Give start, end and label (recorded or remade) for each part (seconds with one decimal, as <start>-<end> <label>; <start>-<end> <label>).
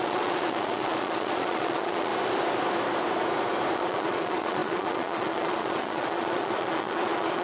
0.0-2.1 remade; 2.1-3.7 recorded; 3.7-7.4 remade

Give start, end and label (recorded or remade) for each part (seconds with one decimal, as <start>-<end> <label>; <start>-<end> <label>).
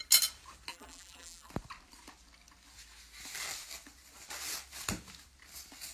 0.0-0.7 recorded; 0.7-1.5 remade; 1.5-5.9 recorded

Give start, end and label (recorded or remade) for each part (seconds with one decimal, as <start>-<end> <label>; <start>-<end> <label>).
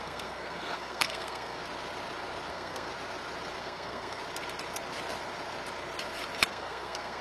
0.0-1.6 remade; 1.6-2.5 recorded; 2.5-2.9 remade; 2.9-3.6 recorded; 3.6-4.2 remade; 4.2-6.5 recorded; 6.5-7.2 remade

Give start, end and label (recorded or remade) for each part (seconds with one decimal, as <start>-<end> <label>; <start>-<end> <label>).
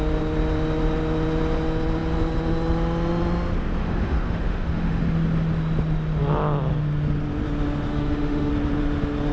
0.0-3.8 recorded; 3.8-5.0 remade; 5.0-7.9 recorded; 7.9-8.5 remade; 8.5-9.3 recorded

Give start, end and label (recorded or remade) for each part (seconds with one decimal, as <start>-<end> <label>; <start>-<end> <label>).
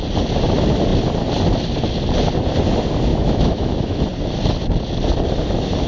0.0-3.1 recorded; 3.1-4.0 remade; 4.0-5.9 recorded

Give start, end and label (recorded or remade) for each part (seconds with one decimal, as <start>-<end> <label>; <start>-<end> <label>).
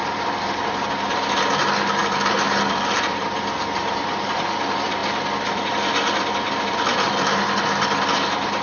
0.0-8.6 recorded